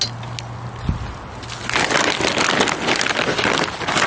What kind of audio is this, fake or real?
real